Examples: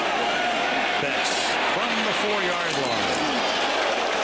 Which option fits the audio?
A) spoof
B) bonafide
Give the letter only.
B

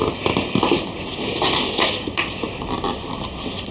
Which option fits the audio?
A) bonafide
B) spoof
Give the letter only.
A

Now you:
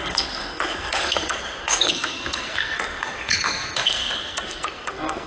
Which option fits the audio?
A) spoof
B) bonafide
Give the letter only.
A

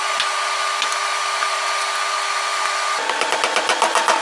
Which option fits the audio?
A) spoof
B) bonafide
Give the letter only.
B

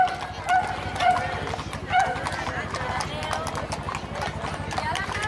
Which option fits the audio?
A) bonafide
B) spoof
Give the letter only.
A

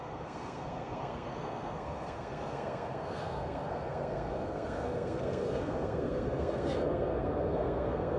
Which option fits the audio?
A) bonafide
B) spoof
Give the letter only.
B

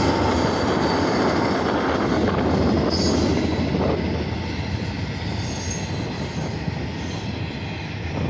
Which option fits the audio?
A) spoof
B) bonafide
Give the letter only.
B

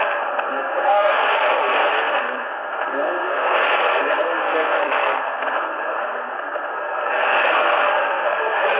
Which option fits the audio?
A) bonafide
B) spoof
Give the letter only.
B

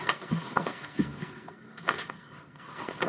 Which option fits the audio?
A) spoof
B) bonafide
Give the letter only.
A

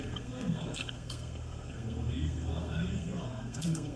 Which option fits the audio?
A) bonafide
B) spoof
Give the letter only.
B